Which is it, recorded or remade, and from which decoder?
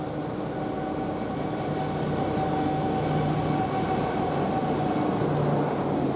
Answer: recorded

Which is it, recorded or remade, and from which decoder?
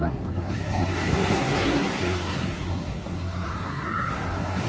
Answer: remade, codec, SNAC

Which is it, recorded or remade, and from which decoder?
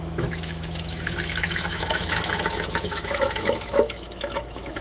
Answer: remade, autoencoder, DAC-VAE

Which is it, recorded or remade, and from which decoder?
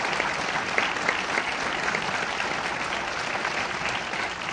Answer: recorded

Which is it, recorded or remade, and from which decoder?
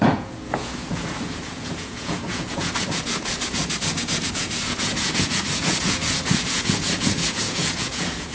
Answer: remade, vocoder, Vocos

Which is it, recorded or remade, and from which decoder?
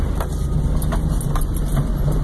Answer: recorded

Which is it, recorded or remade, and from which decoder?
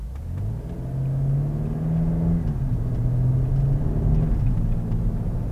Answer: recorded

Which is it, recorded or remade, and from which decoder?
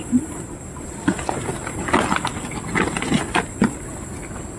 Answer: recorded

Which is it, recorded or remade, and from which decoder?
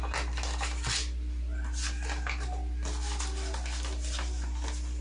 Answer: recorded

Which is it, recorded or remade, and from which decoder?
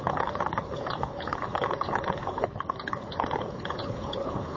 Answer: remade, codec, HILCodec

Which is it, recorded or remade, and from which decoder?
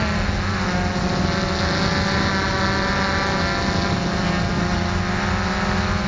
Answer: recorded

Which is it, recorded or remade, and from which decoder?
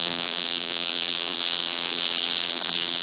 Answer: remade, vocoder, BigVGAN v2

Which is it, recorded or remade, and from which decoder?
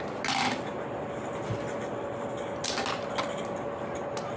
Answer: recorded